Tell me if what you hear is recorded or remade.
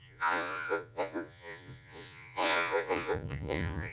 remade